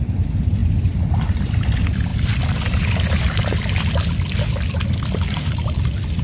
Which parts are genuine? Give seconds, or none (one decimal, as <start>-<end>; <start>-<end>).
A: none